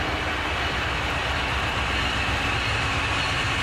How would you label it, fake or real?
real